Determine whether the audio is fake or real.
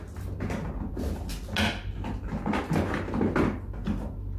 real